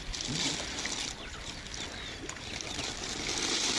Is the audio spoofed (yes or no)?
no